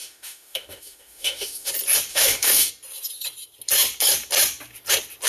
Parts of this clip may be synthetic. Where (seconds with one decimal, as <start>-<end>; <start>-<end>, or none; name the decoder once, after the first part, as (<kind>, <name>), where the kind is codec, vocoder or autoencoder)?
0.0-1.7 (autoencoder, DAC-VAE); 2.1-2.7